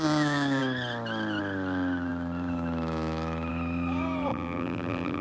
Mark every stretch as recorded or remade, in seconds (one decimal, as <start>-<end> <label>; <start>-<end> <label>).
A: 0.0-4.3 recorded; 4.3-5.2 remade